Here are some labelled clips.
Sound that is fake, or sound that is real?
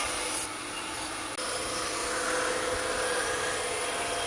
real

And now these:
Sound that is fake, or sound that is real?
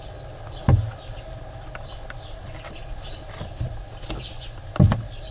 real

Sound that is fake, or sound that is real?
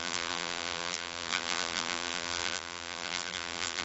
fake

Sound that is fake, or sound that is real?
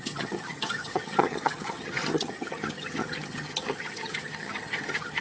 fake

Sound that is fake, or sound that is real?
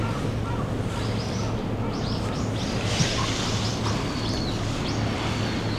real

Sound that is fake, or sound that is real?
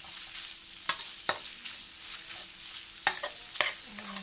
real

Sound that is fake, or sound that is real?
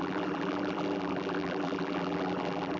fake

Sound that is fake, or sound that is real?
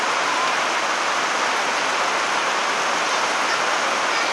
real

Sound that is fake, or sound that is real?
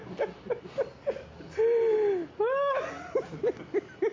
real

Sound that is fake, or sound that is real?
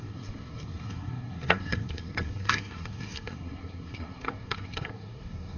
fake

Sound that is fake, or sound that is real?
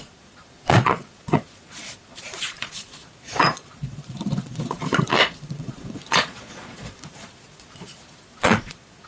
fake